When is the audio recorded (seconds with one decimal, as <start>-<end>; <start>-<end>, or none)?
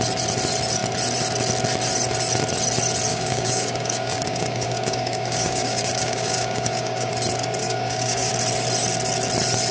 0.0-3.1; 7.1-7.6; 8.3-9.7